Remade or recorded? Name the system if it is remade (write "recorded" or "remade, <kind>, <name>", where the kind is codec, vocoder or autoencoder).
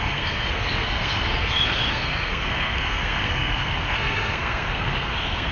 remade, codec, SNAC